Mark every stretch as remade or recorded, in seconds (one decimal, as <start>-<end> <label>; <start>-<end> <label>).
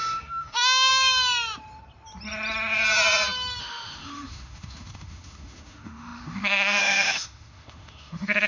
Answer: 0.0-0.9 remade; 0.9-3.6 recorded; 3.6-8.5 remade